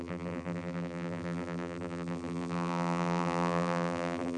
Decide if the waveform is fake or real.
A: fake